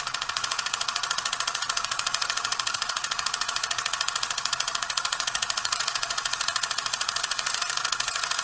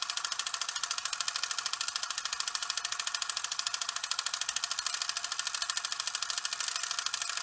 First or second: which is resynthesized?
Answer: first